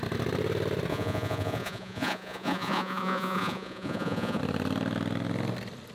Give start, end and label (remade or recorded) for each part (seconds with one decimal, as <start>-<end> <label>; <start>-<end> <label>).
0.0-0.9 recorded; 0.9-4.4 remade; 4.4-5.9 recorded